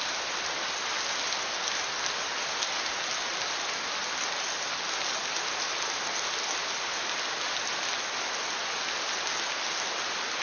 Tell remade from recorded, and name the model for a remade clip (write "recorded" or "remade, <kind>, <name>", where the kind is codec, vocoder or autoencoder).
recorded